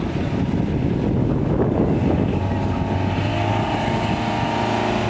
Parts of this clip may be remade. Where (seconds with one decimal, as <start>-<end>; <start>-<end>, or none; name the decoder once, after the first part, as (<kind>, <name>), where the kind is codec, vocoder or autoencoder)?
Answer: 1.2-2.4 (codec, DAC); 3.3-4.1